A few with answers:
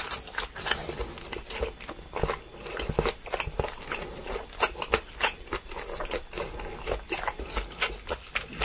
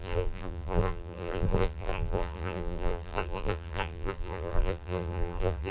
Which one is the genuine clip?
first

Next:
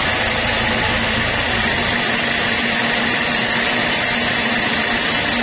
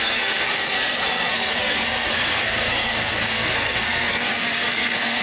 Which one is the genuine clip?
first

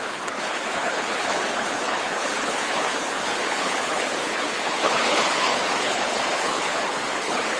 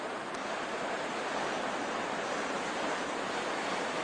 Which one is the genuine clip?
second